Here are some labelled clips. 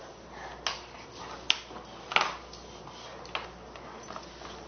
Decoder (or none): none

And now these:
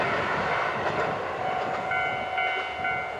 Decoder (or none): vocoder, BigVGAN v2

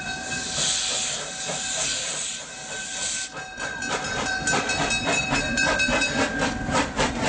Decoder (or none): none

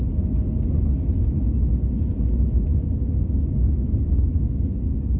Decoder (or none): none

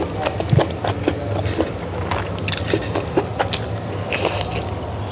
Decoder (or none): none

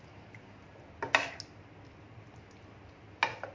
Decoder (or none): none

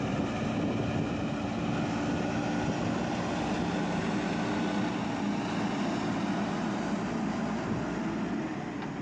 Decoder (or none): none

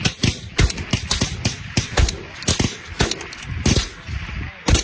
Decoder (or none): none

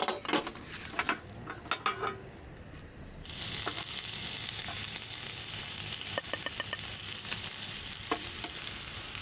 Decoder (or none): none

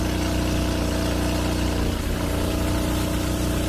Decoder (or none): none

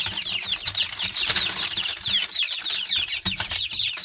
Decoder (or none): vocoder, BigVGAN v2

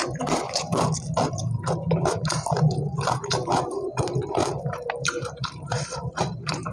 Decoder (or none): vocoder, BigVGAN v2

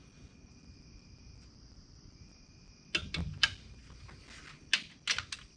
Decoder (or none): none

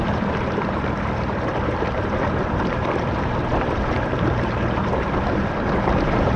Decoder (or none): vocoder, BigVGAN v2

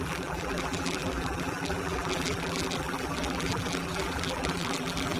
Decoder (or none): vocoder, BigVGAN v2